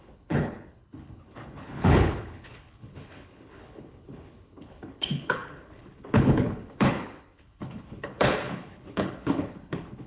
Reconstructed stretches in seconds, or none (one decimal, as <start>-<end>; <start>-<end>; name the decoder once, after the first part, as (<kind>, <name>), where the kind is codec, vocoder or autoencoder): 0.0-10.1 (codec, HILCodec)